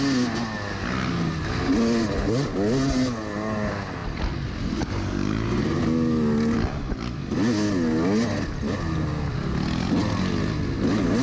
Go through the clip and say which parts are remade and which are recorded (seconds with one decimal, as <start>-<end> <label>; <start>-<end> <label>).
0.0-11.2 recorded